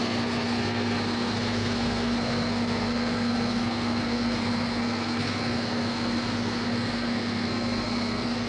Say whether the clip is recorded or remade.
remade